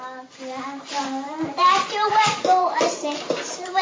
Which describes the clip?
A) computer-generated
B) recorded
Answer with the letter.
A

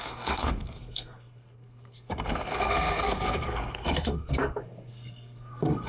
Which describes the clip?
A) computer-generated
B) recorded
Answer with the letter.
A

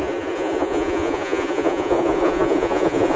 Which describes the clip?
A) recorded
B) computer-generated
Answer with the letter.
B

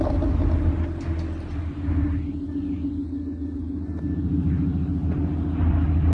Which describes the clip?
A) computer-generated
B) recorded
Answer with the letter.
B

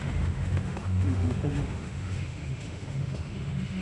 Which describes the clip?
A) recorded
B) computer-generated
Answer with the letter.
B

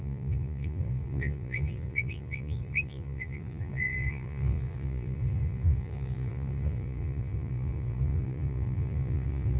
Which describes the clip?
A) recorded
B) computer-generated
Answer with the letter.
B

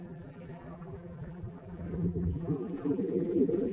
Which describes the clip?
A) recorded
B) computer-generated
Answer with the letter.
B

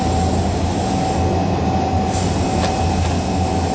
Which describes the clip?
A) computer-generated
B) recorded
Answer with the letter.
B